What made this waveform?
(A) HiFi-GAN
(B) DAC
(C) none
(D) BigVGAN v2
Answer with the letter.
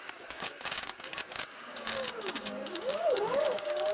B